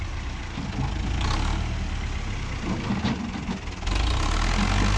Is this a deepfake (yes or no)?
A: no